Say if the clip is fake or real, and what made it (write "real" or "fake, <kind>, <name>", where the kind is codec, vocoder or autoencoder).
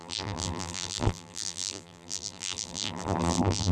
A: fake, vocoder, BigVGAN v2